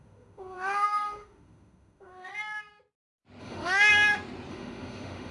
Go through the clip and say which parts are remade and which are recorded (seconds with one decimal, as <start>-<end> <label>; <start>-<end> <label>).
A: 0.0-2.3 remade; 2.3-3.4 recorded; 3.4-3.9 remade; 3.9-4.5 recorded; 4.5-5.3 remade